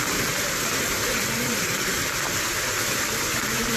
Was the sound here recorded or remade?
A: recorded